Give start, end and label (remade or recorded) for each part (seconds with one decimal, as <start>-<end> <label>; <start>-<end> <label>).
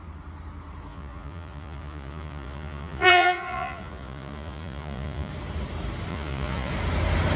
0.0-0.9 recorded; 0.9-5.3 remade; 5.3-6.1 recorded; 6.1-6.7 remade; 6.7-7.4 recorded